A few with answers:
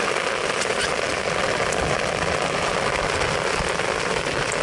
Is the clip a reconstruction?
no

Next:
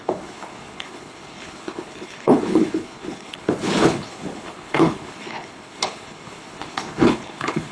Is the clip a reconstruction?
yes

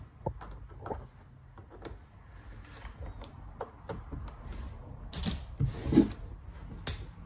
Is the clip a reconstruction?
no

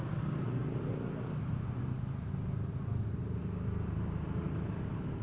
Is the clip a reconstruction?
no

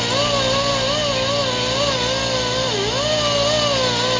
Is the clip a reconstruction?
no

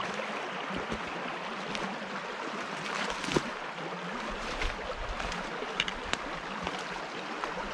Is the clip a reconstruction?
no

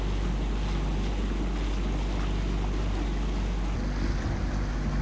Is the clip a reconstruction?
no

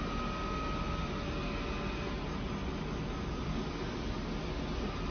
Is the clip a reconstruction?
no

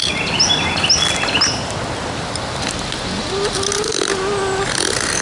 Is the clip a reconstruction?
no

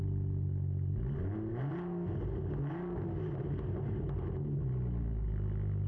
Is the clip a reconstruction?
no